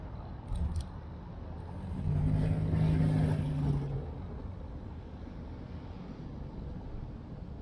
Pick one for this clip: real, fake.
real